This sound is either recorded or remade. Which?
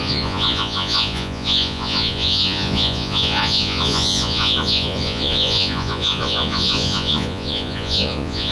remade